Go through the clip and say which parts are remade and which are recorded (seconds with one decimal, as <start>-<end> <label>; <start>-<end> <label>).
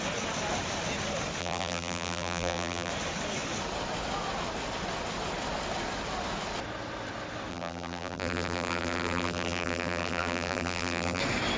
0.0-1.4 recorded; 1.4-2.9 remade; 2.9-7.5 recorded; 7.5-11.2 remade; 11.2-11.6 recorded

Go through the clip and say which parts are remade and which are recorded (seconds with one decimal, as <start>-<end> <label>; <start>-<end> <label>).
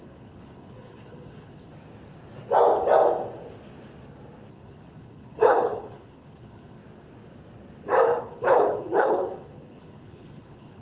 0.0-1.7 remade; 1.7-4.5 recorded; 4.5-6.8 remade; 6.8-8.2 recorded; 8.2-10.8 remade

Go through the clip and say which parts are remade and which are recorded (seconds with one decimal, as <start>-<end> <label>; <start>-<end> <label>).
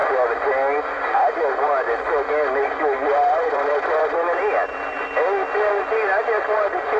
0.0-3.1 recorded; 3.1-4.4 remade; 4.4-7.0 recorded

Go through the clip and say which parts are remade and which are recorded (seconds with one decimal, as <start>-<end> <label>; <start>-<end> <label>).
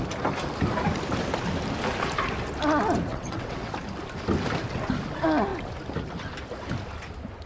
0.0-3.1 recorded; 3.1-3.7 remade; 3.7-7.5 recorded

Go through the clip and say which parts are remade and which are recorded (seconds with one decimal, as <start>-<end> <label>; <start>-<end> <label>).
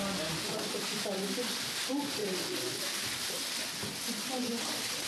0.0-5.1 recorded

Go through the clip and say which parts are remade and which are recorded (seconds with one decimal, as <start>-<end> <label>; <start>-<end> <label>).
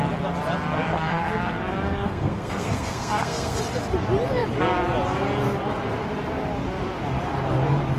0.0-0.9 recorded; 0.9-3.6 remade; 3.6-8.0 recorded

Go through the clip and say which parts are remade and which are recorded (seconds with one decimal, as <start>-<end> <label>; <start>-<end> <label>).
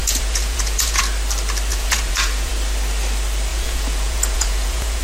0.0-1.0 remade; 1.0-1.7 recorded; 1.7-2.5 remade; 2.5-3.5 recorded; 3.5-5.0 remade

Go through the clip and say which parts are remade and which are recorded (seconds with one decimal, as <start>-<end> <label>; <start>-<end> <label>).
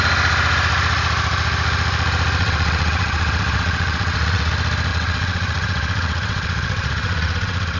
0.0-2.4 recorded; 2.4-4.5 remade; 4.5-4.9 recorded; 4.9-7.8 remade